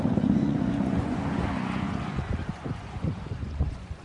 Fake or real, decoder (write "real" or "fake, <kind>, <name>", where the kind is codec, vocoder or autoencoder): fake, vocoder, Vocos